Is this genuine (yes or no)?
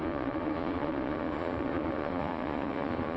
no